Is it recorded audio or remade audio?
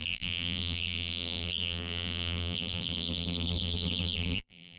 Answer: remade